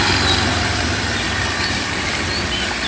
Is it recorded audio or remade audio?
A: recorded